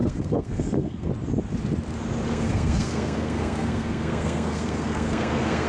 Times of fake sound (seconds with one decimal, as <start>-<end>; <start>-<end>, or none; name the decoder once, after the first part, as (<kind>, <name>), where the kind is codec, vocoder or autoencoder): 0.0-1.1 (codec, SNAC); 2.3-5.7